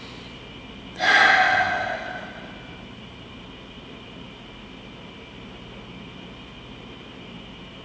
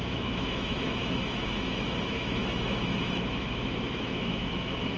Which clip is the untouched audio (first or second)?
first